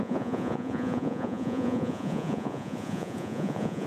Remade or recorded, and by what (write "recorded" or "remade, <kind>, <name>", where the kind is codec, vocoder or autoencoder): remade, vocoder, Vocos